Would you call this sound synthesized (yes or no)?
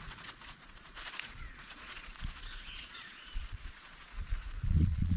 yes